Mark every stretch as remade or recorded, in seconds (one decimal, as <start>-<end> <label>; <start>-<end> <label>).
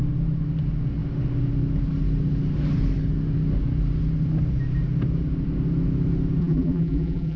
0.0-6.4 recorded; 6.4-7.4 remade